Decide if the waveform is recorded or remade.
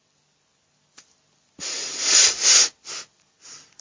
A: recorded